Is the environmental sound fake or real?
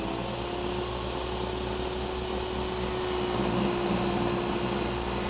real